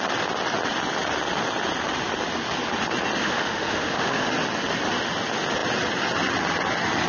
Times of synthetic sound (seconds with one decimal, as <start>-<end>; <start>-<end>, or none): 3.2-4.3

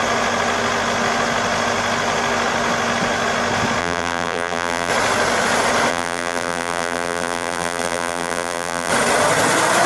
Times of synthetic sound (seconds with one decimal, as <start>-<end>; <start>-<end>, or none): 3.8-4.9; 5.9-8.9